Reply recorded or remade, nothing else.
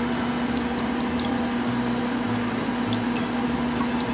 recorded